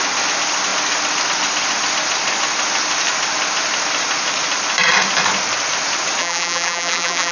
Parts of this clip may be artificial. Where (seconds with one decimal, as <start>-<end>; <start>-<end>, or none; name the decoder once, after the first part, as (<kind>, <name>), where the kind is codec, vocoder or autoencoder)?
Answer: 6.2-7.3 (vocoder, BigVGAN v2)

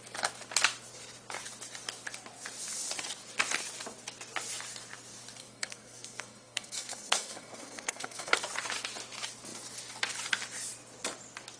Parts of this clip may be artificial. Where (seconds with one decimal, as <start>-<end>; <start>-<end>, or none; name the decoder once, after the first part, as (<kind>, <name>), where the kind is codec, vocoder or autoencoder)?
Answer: 5.4-8.3 (codec, SNAC)

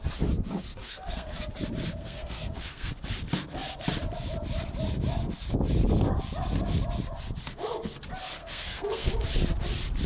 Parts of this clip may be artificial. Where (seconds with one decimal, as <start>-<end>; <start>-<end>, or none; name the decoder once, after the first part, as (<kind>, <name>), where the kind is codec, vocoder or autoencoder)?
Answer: 0.8-1.5 (codec, SNAC); 2.0-2.9; 8.4-9.1

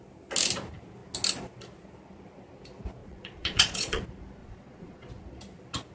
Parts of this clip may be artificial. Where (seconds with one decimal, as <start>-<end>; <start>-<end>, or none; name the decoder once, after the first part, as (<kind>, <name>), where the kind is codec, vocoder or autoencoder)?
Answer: 3.0-4.0 (vocoder, Vocos); 4.4-5.1

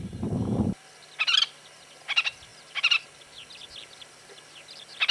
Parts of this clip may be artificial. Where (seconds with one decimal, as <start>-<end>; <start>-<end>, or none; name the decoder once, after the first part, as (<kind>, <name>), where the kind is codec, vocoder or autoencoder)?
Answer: none

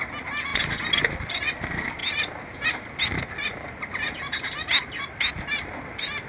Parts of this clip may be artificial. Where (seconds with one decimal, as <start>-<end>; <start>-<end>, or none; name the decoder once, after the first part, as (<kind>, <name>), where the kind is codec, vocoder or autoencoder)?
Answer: none

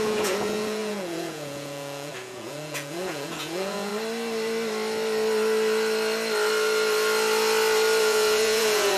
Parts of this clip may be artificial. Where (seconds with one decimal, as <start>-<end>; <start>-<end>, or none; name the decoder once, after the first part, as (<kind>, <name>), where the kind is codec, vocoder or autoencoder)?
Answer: 0.0-3.9 (vocoder, Vocos); 8.0-9.0